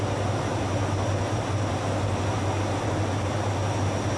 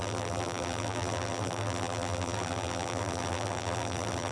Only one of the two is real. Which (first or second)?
first